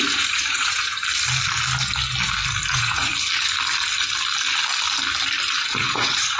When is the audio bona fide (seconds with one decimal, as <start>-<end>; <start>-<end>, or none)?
1.0-2.7; 3.1-5.7